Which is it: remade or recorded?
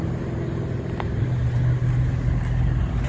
recorded